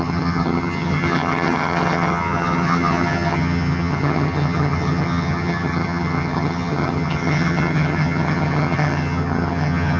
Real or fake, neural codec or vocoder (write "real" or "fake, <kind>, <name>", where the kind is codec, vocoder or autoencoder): fake, vocoder, HiFi-GAN